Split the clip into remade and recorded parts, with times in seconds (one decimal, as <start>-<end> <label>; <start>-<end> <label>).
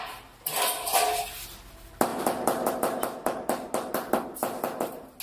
0.0-2.1 recorded; 2.1-2.7 remade; 2.7-5.2 recorded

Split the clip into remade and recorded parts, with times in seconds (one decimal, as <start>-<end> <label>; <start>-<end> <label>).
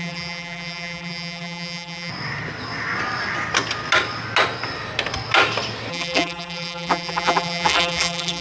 0.0-2.1 remade; 2.1-5.9 recorded; 5.9-8.4 remade